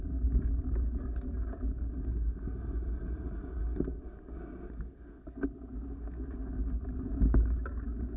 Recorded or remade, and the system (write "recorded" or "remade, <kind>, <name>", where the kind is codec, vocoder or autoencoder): recorded